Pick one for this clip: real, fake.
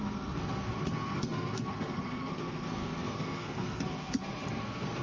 fake